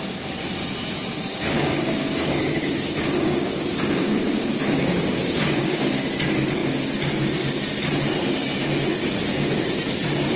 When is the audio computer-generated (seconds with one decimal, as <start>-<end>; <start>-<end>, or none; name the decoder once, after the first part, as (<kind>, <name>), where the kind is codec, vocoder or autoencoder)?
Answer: 1.3-5.8 (codec, DAC)